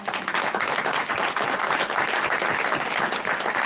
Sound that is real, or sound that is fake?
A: real